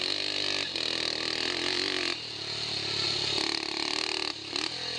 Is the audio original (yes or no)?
yes